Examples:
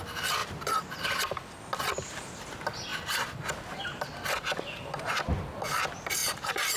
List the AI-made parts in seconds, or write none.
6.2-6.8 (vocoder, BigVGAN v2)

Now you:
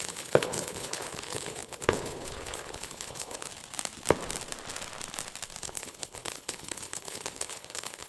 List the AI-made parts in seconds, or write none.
0.0-3.5 (codec, HILCodec); 5.6-8.1

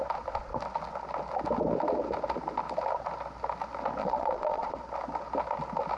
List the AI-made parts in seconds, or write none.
4.0-4.7 (vocoder, Vocos)